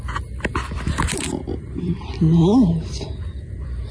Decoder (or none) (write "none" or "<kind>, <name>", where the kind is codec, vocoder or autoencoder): none